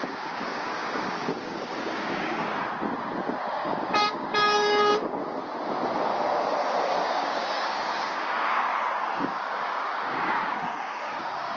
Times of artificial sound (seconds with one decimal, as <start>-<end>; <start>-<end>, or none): 0.0-2.5; 3.4-5.2; 6.8-8.7; 9.2-11.6